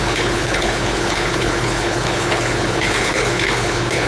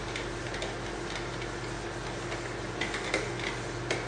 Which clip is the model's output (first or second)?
first